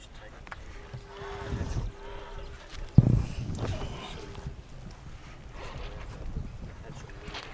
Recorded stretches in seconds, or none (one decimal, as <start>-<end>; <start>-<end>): 0.0-7.5